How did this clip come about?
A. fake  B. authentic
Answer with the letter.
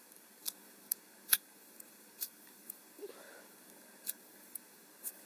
A